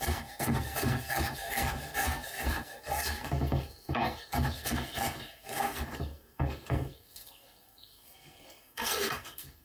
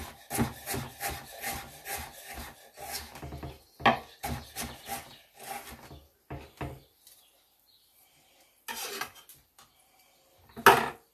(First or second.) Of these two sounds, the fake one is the first